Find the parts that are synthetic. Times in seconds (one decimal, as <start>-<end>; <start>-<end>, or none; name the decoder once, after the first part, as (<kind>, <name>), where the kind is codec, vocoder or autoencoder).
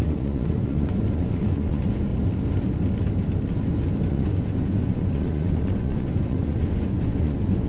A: 0.0-2.1 (vocoder, Vocos); 4.1-7.7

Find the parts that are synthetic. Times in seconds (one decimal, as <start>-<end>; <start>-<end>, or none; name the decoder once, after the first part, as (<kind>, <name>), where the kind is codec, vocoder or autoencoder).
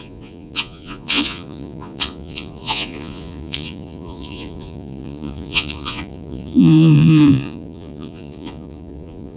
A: 0.0-9.4 (vocoder, Vocos)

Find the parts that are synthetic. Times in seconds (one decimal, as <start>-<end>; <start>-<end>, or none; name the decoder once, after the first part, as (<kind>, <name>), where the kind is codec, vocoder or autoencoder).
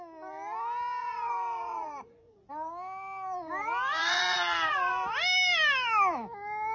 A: 1.0-2.5 (vocoder, Vocos); 4.0-4.9